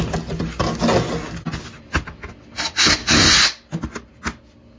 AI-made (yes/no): no